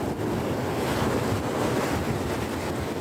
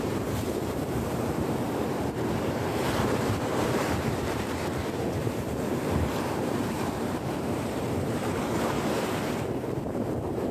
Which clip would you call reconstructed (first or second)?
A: second